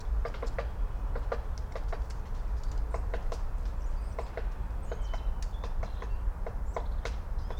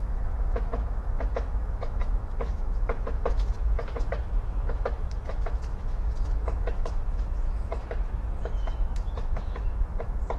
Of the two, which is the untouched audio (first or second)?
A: first